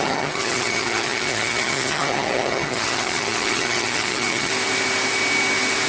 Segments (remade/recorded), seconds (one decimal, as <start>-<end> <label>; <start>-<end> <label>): 0.0-4.5 remade; 4.5-5.9 recorded